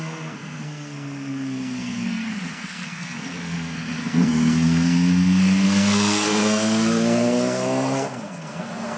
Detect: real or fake fake